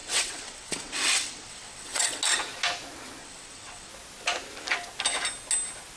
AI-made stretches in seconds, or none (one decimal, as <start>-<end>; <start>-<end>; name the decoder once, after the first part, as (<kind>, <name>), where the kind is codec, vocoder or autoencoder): 0.0-2.2 (vocoder, WaveNeXt); 3.2-3.9